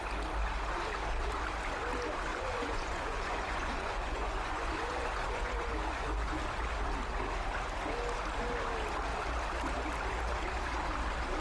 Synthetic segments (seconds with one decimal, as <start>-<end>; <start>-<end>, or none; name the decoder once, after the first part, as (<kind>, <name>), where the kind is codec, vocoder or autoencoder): 2.3-6.4 (vocoder, Vocos)